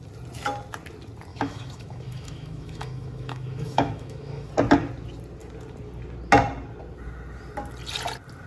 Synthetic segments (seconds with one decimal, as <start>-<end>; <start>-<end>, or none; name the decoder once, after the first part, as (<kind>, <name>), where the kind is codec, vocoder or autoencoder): 1.3-4.5 (autoencoder, DAC-VAE)